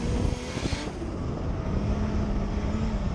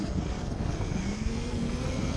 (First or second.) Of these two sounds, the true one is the first